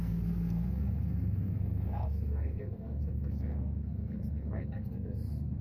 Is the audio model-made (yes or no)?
yes